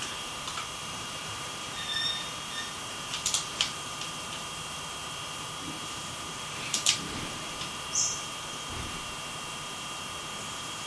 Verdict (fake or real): fake